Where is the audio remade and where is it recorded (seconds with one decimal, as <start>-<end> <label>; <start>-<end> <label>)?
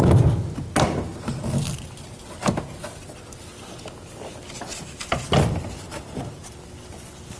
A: 0.0-7.4 recorded